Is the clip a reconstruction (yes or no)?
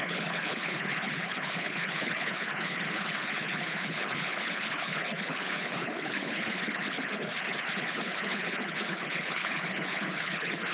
yes